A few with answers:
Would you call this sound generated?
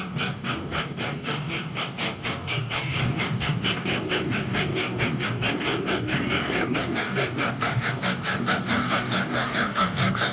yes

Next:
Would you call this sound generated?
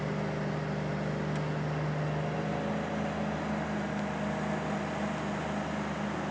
no